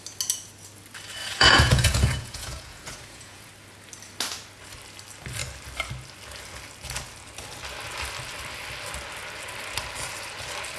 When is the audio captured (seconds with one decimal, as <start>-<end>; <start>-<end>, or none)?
0.0-1.2; 3.5-10.8